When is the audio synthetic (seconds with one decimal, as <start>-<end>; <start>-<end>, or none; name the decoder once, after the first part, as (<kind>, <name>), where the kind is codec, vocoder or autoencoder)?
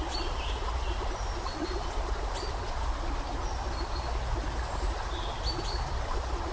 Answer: none